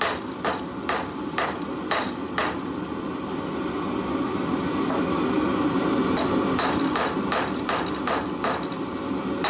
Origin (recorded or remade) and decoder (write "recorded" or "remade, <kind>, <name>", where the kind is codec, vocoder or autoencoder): recorded